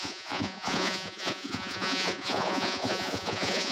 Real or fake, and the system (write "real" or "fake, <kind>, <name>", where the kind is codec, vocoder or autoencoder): fake, vocoder, Vocos